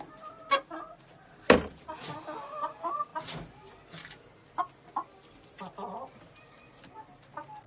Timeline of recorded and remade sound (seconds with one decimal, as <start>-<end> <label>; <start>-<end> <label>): 0.0-7.7 recorded